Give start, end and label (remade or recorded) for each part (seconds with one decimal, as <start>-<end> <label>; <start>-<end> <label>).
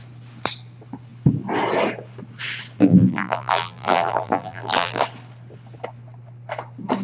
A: 0.0-2.8 recorded; 2.8-5.0 remade; 5.0-7.0 recorded